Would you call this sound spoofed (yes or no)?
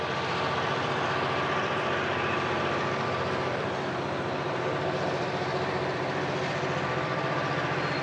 yes